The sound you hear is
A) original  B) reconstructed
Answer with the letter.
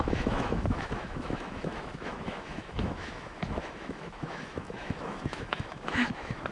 B